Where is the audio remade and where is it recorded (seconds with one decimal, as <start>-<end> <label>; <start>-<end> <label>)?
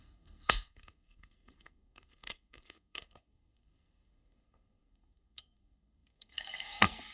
0.0-7.1 remade